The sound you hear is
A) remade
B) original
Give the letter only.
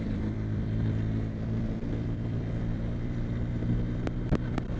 A